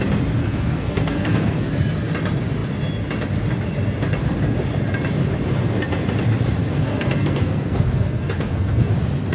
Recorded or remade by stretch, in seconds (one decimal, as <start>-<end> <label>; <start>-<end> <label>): 0.0-0.4 recorded; 0.4-1.7 remade; 1.7-6.6 recorded; 6.6-8.9 remade; 8.9-9.3 recorded